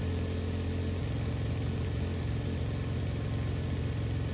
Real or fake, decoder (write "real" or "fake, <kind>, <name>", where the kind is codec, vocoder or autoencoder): real